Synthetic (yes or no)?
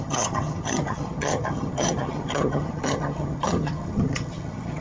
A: yes